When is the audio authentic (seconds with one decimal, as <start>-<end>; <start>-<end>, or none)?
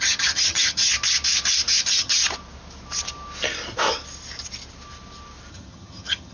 0.9-1.8; 2.2-5.5